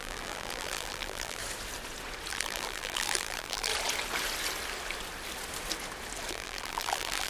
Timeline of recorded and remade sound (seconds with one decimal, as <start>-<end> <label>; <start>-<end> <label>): 0.0-1.4 remade; 1.4-2.3 recorded; 2.3-3.7 remade; 3.7-6.3 recorded; 6.3-7.3 remade

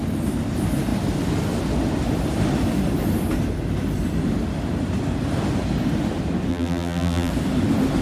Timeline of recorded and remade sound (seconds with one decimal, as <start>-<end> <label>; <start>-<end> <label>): 0.0-6.5 recorded; 6.5-7.3 remade; 7.3-8.0 recorded

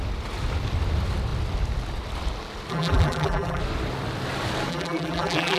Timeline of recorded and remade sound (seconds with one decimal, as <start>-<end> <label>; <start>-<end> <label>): 0.0-2.7 recorded; 2.7-3.6 remade; 3.6-4.7 recorded; 4.7-5.6 remade

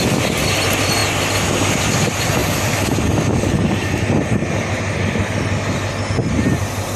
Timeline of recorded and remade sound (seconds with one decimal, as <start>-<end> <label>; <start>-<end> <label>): 0.0-7.0 recorded

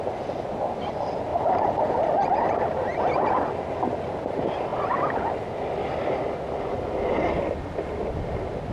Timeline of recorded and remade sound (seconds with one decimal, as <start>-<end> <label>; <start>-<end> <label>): 0.0-1.3 recorded; 1.3-2.1 remade; 2.1-8.7 recorded